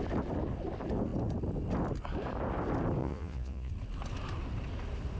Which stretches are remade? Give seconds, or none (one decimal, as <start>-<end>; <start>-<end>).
3.0-3.7